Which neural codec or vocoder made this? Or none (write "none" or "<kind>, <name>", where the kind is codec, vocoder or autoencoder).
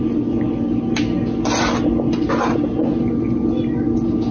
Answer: none